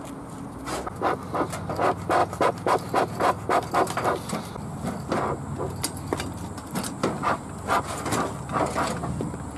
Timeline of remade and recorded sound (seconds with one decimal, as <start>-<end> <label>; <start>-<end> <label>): 0.0-9.6 recorded